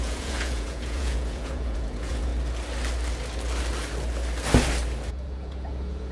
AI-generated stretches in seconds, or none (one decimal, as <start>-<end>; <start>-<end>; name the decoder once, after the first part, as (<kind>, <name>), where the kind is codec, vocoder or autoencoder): 0.0-2.3 (vocoder, Vocos); 5.1-6.1